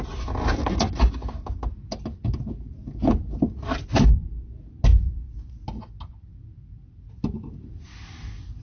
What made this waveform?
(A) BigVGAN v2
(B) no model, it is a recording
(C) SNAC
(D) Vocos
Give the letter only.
B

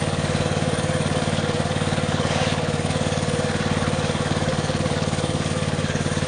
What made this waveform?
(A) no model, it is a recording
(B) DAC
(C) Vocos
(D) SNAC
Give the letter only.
B